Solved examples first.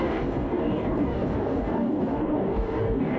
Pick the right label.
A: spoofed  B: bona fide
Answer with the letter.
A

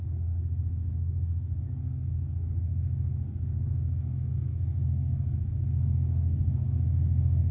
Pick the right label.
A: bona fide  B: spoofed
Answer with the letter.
B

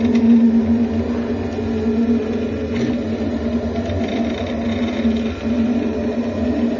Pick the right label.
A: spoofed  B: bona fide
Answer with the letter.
B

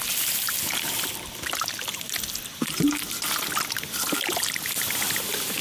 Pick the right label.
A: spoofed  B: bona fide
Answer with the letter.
B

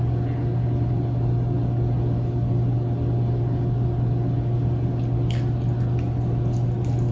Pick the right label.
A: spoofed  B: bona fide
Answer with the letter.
B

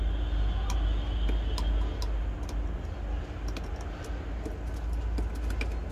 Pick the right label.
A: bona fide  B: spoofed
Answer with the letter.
A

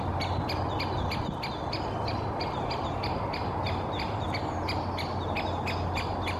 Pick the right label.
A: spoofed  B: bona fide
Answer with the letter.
B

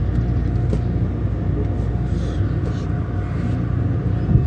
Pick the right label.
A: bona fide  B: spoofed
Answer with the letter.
A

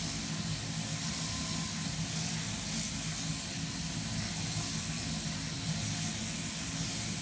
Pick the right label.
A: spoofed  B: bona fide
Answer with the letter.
B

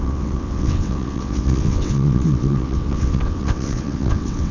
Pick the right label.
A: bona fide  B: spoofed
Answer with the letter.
B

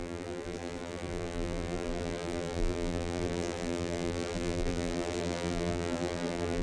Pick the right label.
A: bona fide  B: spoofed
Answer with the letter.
B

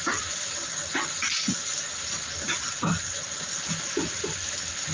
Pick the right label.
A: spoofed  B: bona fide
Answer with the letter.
B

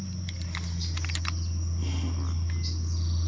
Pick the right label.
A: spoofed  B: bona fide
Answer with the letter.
B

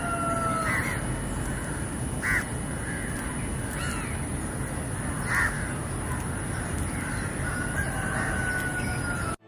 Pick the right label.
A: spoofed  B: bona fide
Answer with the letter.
B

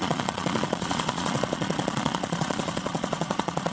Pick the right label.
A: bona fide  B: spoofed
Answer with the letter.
B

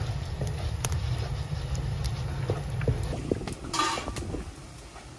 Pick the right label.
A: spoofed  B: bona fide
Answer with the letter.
B